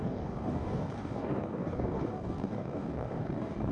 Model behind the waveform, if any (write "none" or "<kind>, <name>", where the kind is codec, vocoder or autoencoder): codec, DAC